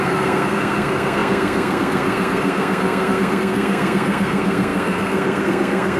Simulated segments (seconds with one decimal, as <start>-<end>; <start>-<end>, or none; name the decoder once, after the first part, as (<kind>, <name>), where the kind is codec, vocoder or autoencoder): 0.0-6.0 (codec, SNAC)